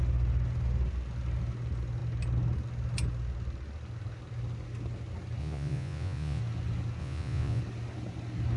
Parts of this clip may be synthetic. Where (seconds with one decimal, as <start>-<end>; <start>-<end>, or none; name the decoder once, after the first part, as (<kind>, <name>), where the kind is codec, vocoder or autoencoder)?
5.4-6.4 (vocoder, Vocos); 7.0-7.6